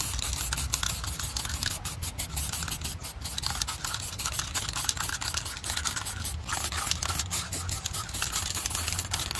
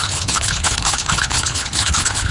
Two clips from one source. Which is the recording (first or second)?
first